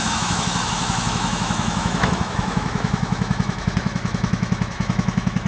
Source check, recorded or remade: remade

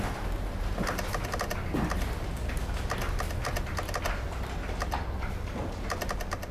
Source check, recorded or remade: recorded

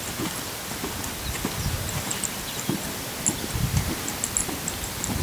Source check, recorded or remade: recorded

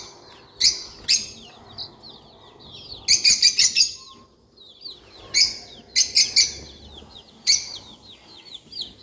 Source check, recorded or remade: recorded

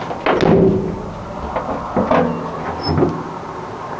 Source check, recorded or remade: recorded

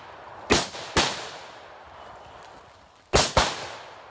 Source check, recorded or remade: recorded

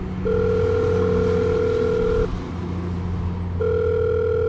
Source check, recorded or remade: recorded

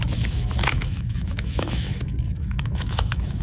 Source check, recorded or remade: remade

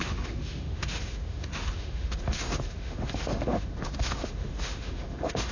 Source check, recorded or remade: remade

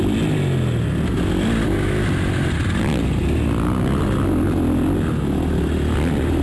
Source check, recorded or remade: recorded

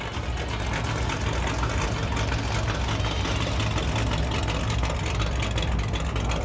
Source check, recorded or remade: recorded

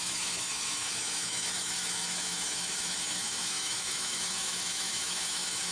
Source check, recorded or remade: remade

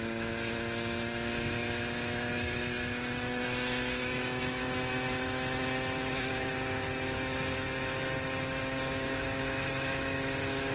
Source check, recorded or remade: remade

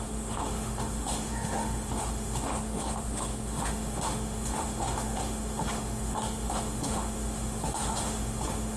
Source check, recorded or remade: remade